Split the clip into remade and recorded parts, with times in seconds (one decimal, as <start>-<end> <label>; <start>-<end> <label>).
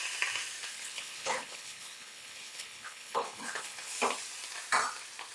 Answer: 0.0-0.7 recorded; 0.7-3.9 remade; 3.9-5.3 recorded